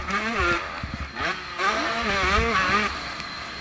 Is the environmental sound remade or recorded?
recorded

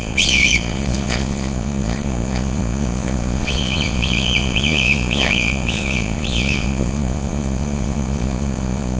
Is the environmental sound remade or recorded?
remade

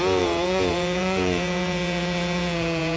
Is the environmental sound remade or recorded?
remade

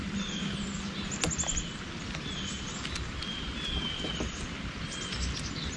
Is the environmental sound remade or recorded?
recorded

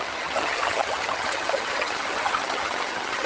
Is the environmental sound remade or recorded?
remade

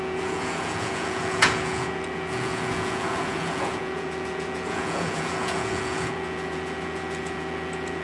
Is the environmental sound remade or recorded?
remade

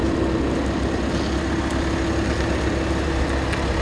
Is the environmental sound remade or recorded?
recorded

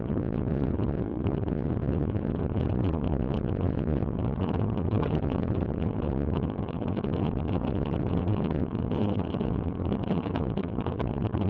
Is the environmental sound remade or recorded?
remade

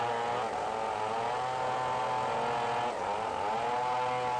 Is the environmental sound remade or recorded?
recorded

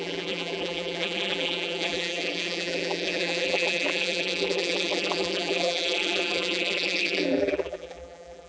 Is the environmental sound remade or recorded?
remade